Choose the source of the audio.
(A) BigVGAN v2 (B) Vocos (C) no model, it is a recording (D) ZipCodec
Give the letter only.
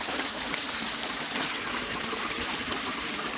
C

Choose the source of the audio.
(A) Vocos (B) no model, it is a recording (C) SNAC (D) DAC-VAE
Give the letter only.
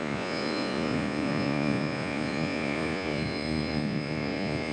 A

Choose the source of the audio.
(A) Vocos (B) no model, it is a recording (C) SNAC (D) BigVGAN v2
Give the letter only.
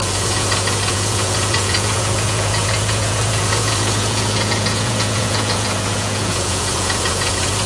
A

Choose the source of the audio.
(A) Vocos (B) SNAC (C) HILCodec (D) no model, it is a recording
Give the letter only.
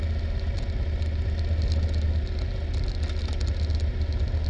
D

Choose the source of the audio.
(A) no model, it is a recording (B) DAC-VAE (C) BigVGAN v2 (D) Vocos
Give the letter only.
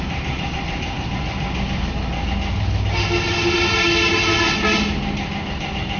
A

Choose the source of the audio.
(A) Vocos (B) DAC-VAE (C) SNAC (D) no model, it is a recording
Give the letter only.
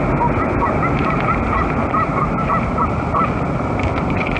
D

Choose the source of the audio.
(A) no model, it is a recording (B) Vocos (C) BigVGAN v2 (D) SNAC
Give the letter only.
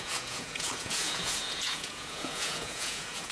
B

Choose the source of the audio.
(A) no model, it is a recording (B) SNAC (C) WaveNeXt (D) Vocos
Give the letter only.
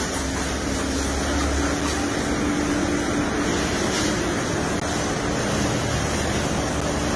A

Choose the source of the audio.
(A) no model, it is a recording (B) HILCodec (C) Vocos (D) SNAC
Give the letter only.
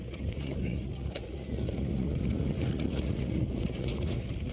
C